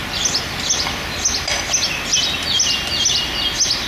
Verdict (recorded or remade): recorded